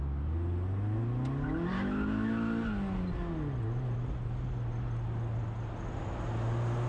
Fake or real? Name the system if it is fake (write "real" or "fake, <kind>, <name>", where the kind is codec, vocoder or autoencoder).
real